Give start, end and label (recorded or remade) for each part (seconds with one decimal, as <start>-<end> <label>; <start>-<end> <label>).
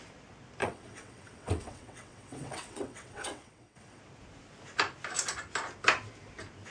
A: 0.0-0.6 recorded; 0.6-4.0 remade; 4.0-6.7 recorded